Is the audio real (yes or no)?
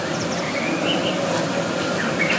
yes